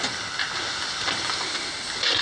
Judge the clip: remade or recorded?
recorded